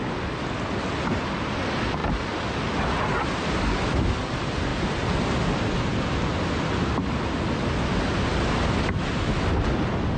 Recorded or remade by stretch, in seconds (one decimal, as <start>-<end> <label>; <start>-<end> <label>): 0.0-10.2 recorded

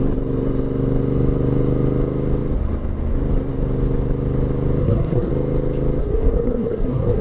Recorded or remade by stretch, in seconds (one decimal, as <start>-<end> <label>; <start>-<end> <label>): 0.0-4.8 recorded; 4.8-5.3 remade; 5.3-6.0 recorded; 6.0-7.2 remade

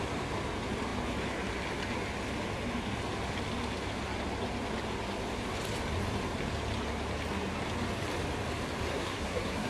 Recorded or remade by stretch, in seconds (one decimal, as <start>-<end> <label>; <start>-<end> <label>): 0.0-8.9 recorded; 8.9-9.7 remade

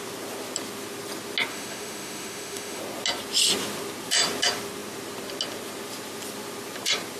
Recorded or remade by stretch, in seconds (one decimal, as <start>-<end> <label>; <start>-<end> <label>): 0.0-1.5 recorded; 1.5-2.8 remade; 2.8-7.2 recorded